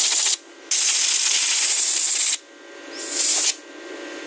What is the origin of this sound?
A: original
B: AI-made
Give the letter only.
A